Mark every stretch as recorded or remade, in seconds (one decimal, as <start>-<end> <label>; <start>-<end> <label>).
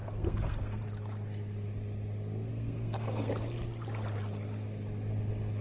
0.0-0.8 remade; 0.8-2.5 recorded; 2.5-3.3 remade; 3.3-5.6 recorded